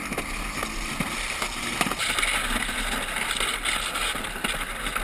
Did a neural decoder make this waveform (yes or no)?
no